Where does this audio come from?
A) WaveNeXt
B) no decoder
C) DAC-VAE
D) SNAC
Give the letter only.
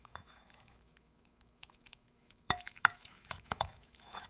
C